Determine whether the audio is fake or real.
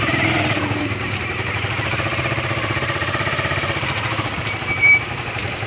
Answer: fake